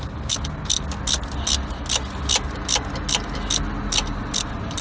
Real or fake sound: real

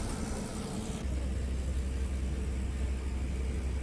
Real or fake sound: real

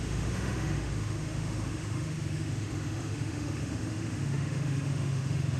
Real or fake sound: fake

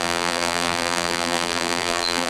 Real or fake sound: fake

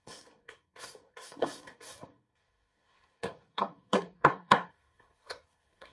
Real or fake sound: fake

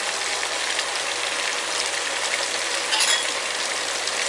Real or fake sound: real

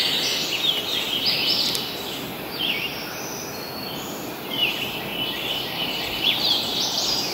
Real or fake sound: real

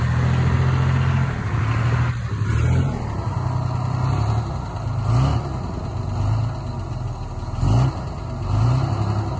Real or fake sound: real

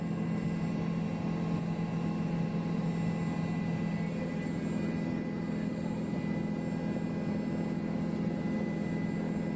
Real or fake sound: real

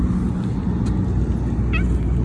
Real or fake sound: real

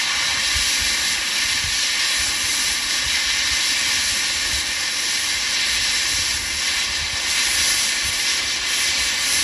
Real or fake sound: real